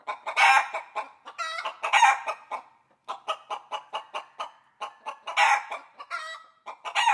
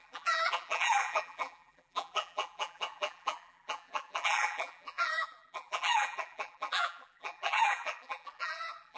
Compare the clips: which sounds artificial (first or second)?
second